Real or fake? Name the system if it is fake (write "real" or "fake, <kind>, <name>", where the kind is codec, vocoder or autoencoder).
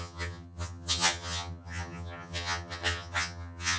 fake, vocoder, HiFi-GAN